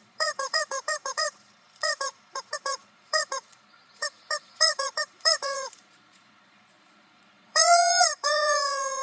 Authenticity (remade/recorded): remade